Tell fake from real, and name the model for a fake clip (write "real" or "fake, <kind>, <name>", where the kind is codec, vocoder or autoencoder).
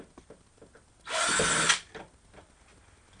real